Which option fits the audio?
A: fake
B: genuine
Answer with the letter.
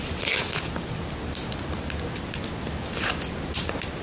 B